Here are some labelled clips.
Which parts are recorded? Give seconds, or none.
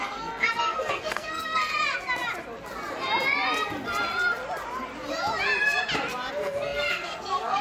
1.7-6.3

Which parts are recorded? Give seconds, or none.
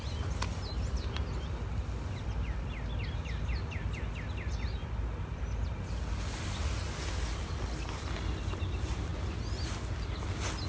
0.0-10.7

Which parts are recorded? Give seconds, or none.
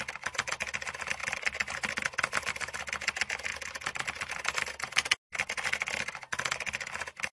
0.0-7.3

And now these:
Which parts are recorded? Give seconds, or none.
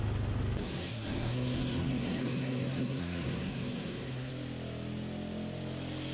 0.0-0.6; 4.3-6.1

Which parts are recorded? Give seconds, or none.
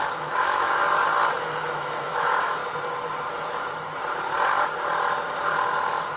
0.8-1.4; 2.6-6.2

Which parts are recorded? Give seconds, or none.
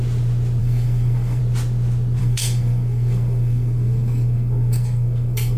0.0-0.6; 1.4-2.2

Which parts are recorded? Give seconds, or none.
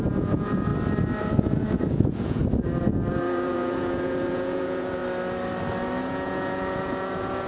0.7-1.2; 2.4-3.1; 5.0-6.0